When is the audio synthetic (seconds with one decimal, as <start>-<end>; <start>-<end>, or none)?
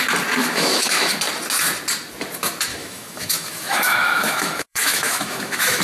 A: 0.4-1.1; 2.7-5.8